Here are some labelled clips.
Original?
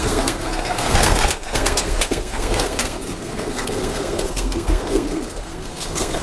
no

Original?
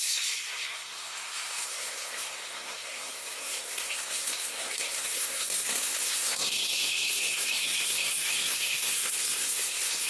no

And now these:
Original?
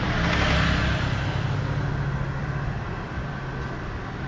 yes